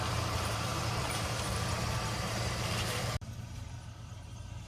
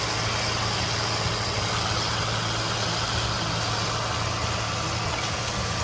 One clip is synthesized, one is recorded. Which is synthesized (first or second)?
first